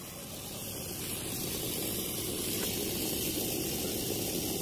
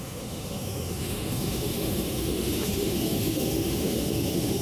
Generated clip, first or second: second